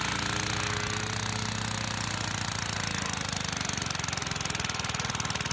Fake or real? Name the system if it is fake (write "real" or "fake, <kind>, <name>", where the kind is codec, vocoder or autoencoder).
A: real